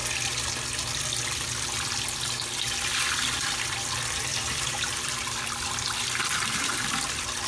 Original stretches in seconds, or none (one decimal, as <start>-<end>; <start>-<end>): 0.0-4.3; 6.2-7.5